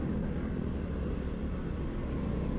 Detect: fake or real real